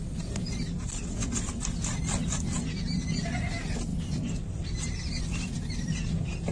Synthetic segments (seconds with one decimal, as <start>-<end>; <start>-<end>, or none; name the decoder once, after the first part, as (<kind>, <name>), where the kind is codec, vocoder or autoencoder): none